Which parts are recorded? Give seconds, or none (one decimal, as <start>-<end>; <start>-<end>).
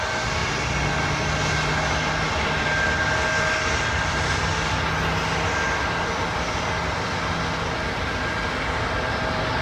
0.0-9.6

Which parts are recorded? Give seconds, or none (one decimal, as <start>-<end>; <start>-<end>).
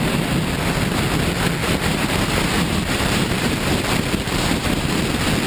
0.0-1.6; 4.9-5.5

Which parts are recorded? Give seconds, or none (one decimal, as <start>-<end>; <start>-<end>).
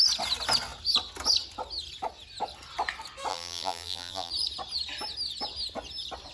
0.0-3.3; 4.3-6.3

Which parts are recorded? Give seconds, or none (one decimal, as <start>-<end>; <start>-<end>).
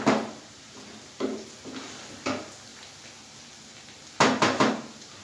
2.7-4.7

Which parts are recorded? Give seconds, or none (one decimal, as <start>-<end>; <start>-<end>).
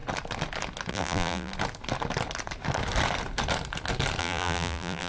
0.0-0.9; 1.5-4.2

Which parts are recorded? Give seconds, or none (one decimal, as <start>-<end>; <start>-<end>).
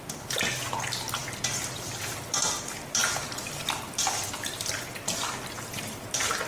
0.0-1.2; 1.9-3.0; 4.3-6.5